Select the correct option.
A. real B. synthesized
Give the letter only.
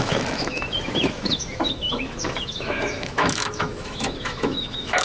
B